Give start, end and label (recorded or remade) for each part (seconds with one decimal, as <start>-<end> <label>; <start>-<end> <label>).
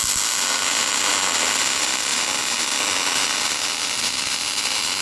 0.0-5.0 recorded